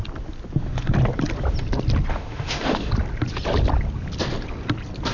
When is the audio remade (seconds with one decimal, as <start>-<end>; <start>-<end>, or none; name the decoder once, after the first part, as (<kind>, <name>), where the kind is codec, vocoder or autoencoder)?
2.1-2.9 (autoencoder, DAC-VAE)